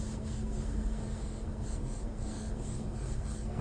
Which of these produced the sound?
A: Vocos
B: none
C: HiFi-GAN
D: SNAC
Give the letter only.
D